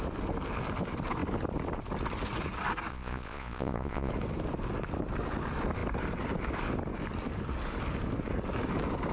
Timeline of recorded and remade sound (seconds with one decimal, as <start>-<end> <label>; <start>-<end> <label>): 0.0-2.9 recorded; 2.9-4.1 remade; 4.1-9.1 recorded